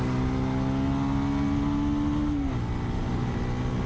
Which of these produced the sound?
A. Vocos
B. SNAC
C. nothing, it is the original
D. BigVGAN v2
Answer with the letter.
C